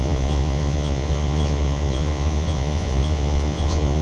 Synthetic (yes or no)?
yes